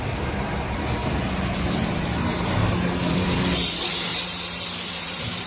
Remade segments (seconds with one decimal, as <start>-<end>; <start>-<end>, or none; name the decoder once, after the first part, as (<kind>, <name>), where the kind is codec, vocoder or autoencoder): 0.0-1.0 (vocoder, BigVGAN v2); 1.6-2.5; 3.1-5.5